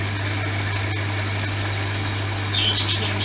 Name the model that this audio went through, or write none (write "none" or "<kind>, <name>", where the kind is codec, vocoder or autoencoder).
none